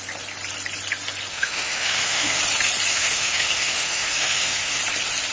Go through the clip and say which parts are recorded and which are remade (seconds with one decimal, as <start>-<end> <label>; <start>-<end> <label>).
0.0-1.3 recorded; 1.3-2.4 remade; 2.4-2.9 recorded; 2.9-4.8 remade; 4.8-5.3 recorded

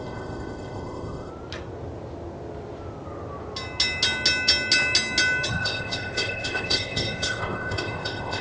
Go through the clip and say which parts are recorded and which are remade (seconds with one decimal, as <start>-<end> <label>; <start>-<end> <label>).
0.0-1.3 remade; 1.3-5.5 recorded; 5.5-8.4 remade

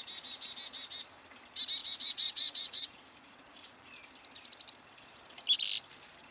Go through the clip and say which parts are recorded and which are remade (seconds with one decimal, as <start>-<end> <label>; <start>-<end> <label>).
0.0-1.8 recorded; 1.8-3.9 remade; 3.9-6.3 recorded

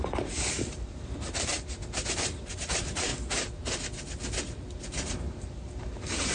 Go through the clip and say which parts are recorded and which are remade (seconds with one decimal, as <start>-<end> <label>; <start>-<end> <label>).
0.0-3.1 remade; 3.1-4.8 recorded; 4.8-6.3 remade

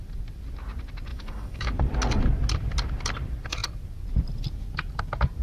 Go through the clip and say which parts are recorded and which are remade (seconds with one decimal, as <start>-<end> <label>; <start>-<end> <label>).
0.0-1.1 recorded; 1.1-1.7 remade; 1.7-5.4 recorded